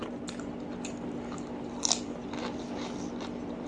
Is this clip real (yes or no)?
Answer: yes